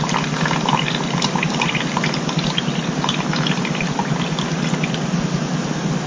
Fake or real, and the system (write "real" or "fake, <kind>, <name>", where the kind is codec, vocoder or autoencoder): real